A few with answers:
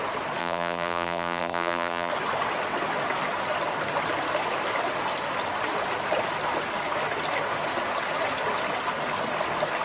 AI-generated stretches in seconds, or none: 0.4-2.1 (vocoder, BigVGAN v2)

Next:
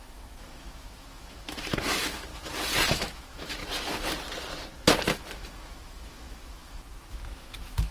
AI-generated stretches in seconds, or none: 0.0-2.3 (autoencoder, DAC-VAE); 2.9-3.6; 5.0-7.9